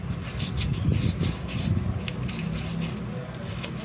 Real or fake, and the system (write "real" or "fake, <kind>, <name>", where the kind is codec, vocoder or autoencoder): real